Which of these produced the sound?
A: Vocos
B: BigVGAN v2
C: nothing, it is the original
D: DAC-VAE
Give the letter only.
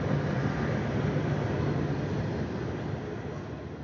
C